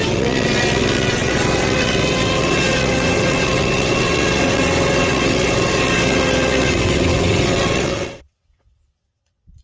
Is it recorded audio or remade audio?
remade